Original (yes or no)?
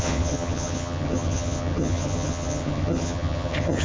no